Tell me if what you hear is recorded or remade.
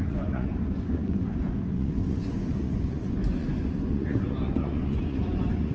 remade